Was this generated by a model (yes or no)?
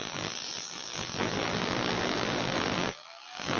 yes